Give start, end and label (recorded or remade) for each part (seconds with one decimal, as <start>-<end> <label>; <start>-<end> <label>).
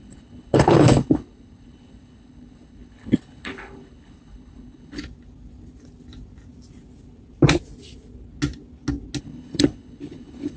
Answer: 0.0-5.0 remade; 5.0-9.2 recorded; 9.2-10.6 remade